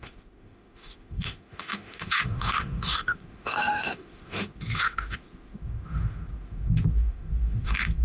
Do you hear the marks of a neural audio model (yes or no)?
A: yes